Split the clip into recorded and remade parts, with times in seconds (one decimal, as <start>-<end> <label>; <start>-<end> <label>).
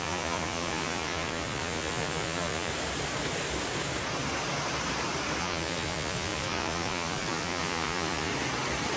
0.0-2.7 remade; 2.7-5.4 recorded; 5.4-8.3 remade; 8.3-9.0 recorded